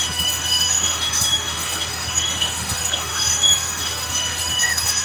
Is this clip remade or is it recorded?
remade